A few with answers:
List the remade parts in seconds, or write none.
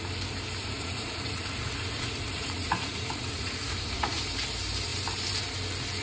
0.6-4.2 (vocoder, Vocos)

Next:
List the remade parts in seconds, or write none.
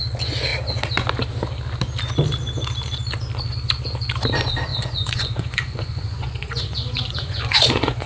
4.7-8.1 (vocoder, Vocos)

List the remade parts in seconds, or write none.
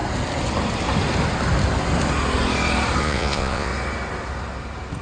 3.0-3.7 (vocoder, Vocos)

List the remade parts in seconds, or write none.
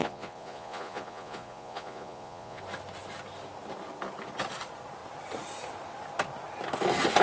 0.0-2.6 (vocoder, Vocos)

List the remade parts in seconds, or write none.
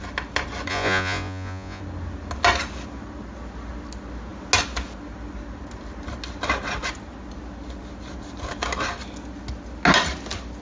0.7-1.8 (vocoder, Vocos)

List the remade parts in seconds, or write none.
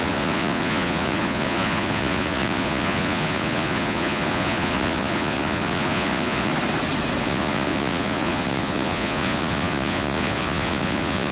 0.0-6.5 (vocoder, Vocos); 7.2-11.3